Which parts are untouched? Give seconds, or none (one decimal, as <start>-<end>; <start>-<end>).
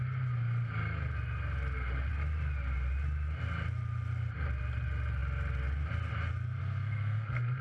0.0-6.6